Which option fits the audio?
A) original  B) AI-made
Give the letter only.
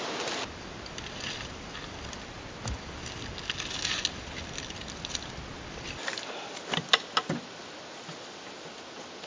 A